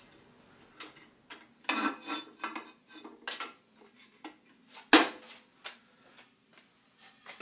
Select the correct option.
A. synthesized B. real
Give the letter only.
B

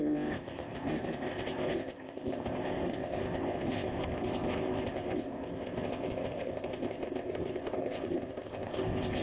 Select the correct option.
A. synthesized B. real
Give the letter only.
A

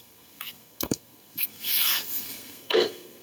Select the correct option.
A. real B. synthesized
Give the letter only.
B